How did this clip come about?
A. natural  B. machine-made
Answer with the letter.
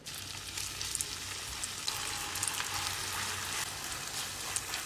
A